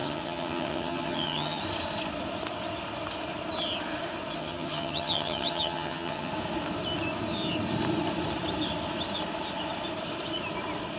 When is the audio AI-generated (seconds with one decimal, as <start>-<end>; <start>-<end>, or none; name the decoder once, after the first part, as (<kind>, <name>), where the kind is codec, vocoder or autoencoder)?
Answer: 0.0-1.6 (vocoder, HiFi-GAN); 4.4-6.3